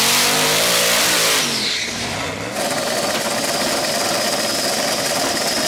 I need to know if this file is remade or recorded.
recorded